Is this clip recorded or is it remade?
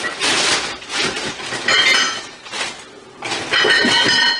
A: recorded